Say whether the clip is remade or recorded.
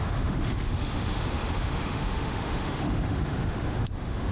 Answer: remade